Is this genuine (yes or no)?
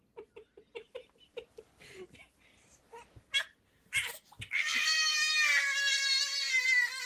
yes